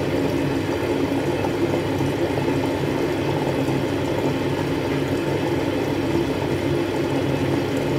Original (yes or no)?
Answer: yes